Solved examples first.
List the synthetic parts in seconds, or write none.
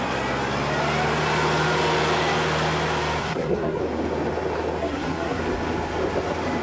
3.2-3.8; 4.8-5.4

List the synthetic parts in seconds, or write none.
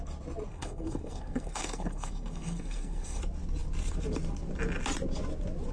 0.5-3.2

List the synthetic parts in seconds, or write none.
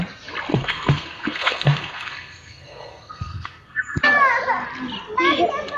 0.5-4.0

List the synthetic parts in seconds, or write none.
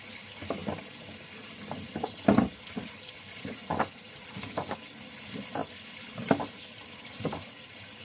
none